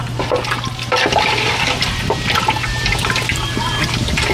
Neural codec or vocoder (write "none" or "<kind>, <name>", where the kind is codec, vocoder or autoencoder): none